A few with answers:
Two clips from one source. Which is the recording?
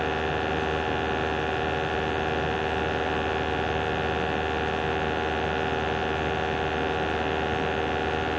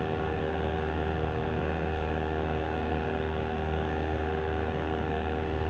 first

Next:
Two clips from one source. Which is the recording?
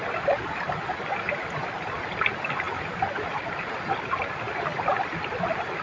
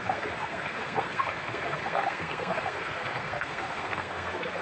first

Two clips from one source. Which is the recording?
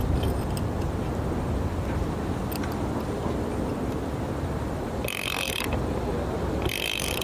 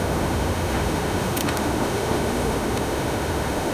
first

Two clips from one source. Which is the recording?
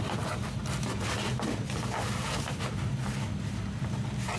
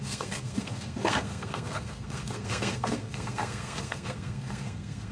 first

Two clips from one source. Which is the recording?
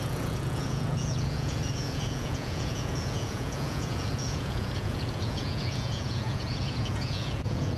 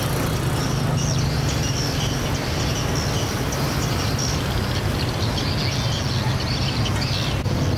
second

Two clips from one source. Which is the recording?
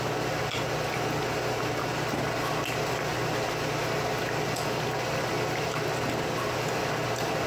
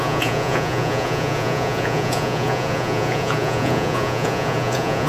first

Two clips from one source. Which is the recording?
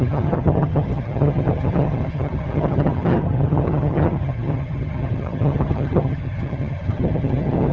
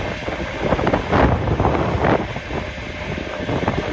second